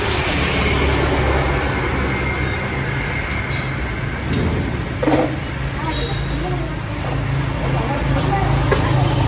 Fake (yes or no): no